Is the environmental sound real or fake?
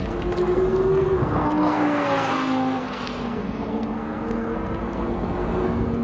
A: fake